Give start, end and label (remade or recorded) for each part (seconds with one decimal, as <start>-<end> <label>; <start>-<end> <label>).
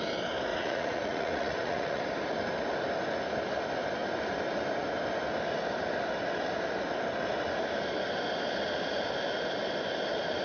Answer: 0.0-0.5 recorded; 0.5-2.0 remade; 2.0-10.4 recorded